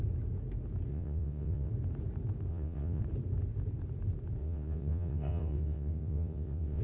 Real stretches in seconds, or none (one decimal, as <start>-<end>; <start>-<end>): 0.0-0.9; 1.7-2.5; 3.0-4.4